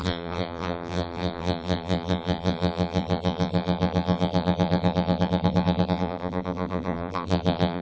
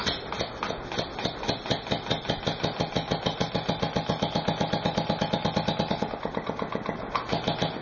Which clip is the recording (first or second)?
second